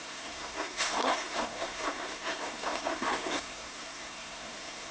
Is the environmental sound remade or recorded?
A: remade